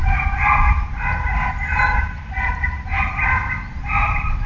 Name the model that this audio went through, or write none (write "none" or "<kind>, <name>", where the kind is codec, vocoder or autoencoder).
none